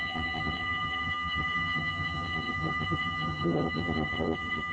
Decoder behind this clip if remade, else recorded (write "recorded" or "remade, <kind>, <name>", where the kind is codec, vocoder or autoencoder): remade, vocoder, HiFi-GAN